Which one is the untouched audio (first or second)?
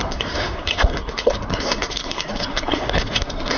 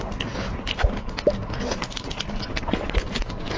second